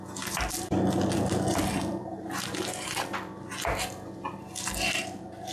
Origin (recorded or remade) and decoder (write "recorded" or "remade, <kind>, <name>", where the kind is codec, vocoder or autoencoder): recorded